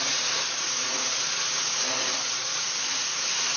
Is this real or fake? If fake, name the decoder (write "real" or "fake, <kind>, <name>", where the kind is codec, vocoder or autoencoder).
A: fake, vocoder, Vocos